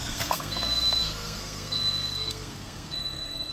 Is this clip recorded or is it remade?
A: remade